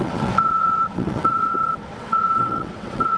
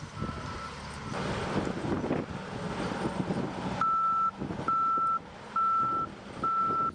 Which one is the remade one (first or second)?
first